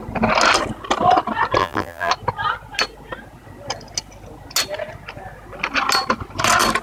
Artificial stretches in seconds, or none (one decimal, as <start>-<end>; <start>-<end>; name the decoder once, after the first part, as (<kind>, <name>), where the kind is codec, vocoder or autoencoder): 1.6-2.1 (vocoder, BigVGAN v2)